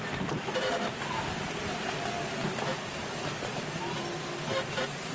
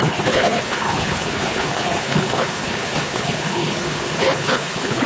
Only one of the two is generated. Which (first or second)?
second